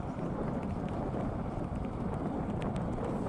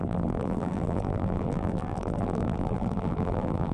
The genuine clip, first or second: first